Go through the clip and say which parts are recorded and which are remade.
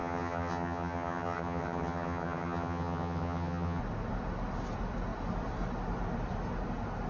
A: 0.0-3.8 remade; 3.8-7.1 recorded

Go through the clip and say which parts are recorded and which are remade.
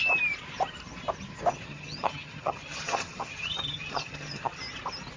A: 0.0-1.5 recorded; 1.5-4.6 remade; 4.6-5.2 recorded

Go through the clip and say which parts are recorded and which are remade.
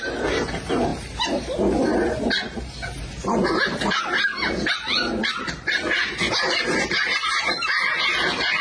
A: 0.0-8.6 recorded